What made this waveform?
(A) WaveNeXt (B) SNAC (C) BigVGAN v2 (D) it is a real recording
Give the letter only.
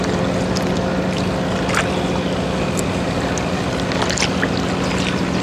D